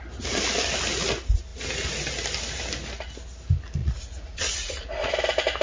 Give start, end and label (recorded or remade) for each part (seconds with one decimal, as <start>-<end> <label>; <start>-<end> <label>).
0.0-3.8 recorded; 3.8-5.1 remade; 5.1-5.6 recorded